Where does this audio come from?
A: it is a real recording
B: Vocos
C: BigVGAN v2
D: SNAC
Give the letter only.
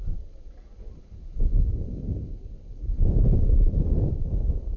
A